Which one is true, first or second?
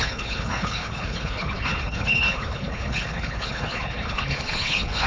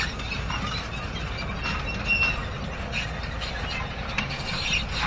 second